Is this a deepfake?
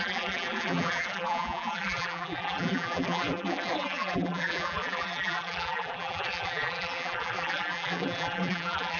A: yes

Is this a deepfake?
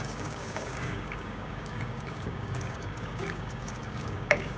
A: yes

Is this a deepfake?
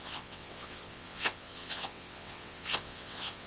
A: yes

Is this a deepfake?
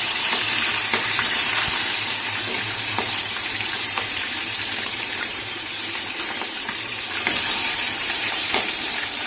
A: yes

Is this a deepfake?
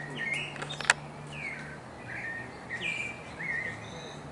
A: no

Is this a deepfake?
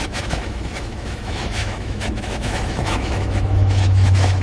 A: yes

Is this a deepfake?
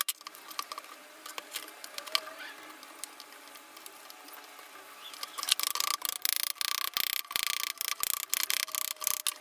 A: no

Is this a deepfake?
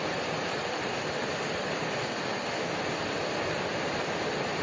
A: no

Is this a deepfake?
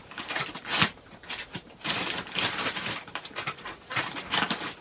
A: yes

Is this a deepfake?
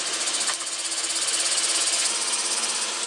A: no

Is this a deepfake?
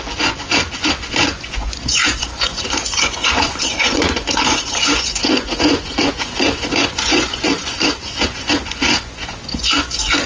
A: yes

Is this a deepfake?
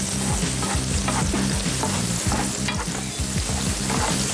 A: no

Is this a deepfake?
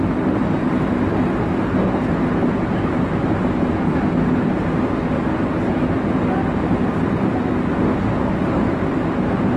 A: no